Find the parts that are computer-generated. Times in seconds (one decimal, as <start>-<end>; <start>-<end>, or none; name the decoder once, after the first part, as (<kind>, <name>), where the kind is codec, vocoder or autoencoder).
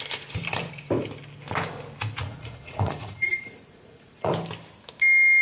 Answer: 2.2-4.3 (vocoder, Vocos)